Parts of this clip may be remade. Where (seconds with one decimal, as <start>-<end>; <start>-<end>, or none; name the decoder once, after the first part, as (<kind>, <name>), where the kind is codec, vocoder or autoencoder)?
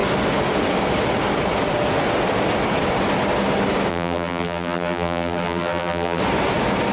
3.9-6.2 (vocoder, BigVGAN v2)